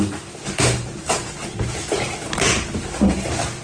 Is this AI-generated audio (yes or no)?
yes